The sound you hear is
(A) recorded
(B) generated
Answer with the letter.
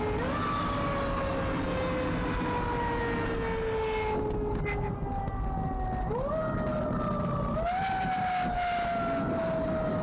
A